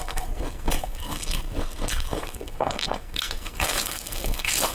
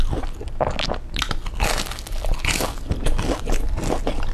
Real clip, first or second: second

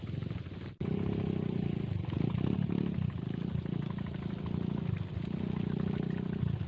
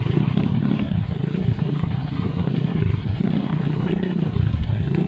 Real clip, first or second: first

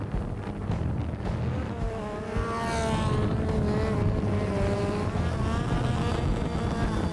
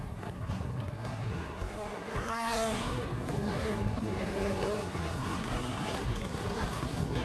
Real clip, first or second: first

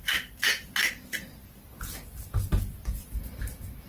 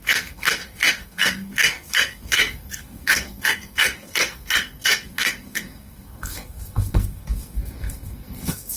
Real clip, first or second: first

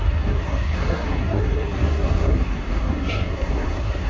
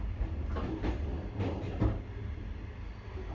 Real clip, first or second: second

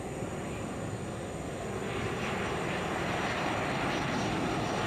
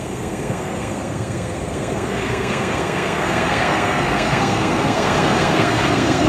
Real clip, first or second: first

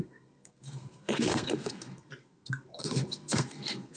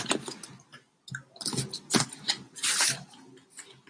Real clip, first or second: second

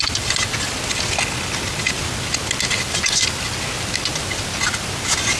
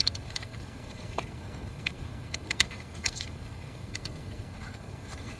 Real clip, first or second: first